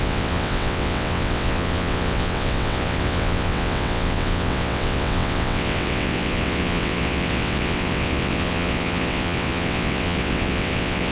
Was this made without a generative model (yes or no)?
no